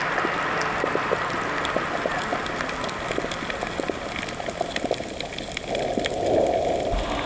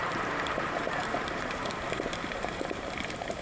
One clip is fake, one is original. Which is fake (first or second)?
second